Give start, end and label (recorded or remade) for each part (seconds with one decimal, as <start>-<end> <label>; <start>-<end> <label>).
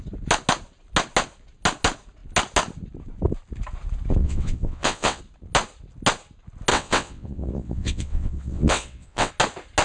0.0-4.2 recorded; 4.2-5.2 remade; 5.2-6.7 recorded; 6.7-9.3 remade; 9.3-9.8 recorded